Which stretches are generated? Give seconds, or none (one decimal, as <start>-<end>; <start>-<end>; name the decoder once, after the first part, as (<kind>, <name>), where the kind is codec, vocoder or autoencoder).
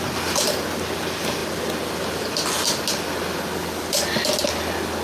none